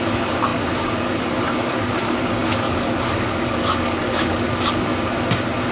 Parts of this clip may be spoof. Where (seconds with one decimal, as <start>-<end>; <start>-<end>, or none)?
0.0-4.9